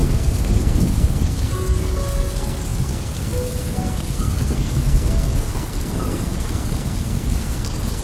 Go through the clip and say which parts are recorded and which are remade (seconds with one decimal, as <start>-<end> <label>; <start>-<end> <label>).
0.0-8.0 remade